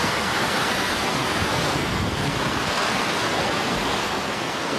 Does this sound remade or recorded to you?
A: remade